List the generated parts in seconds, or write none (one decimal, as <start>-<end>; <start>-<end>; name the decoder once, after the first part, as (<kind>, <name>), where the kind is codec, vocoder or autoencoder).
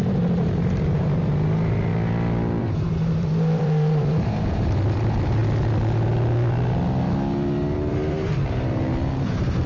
0.0-1.9 (vocoder, BigVGAN v2); 2.6-5.4; 7.9-9.7